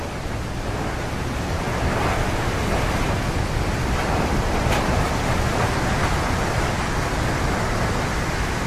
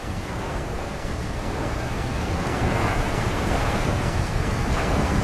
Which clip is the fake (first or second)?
second